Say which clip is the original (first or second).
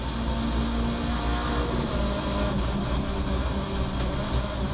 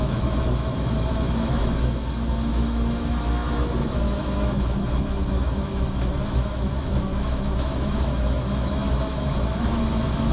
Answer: first